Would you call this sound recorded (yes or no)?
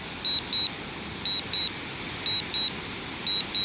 yes